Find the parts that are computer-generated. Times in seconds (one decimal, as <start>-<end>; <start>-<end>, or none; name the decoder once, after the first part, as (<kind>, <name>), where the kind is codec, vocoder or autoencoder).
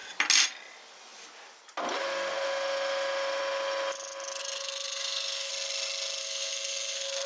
4.4-5.5 (codec, SNAC); 6.2-7.3